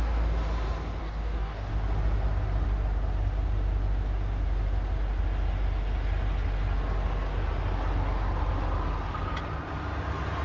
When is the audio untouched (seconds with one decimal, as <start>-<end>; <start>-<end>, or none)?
0.0-1.0; 1.7-10.4